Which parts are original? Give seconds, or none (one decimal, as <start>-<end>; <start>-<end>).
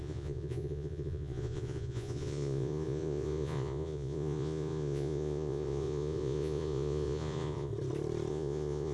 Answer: 7.7-8.3